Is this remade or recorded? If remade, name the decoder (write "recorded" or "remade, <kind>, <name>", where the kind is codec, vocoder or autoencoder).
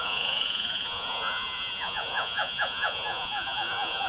remade, vocoder, Vocos